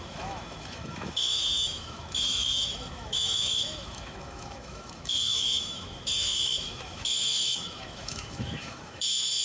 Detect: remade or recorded remade